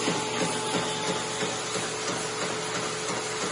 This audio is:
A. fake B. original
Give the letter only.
B